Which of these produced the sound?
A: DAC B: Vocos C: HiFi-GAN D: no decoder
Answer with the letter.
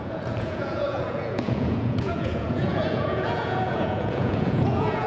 B